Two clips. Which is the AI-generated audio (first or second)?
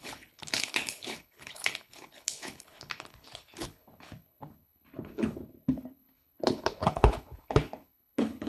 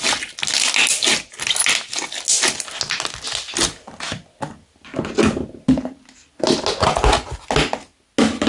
first